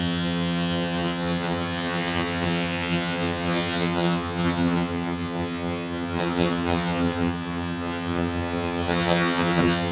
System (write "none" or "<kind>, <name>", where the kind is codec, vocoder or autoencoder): vocoder, HiFi-GAN